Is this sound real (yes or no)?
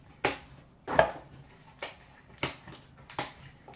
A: yes